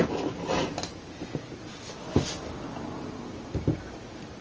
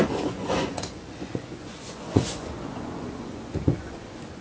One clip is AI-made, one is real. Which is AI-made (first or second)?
second